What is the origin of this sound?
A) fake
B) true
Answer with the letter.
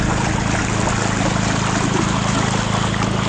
B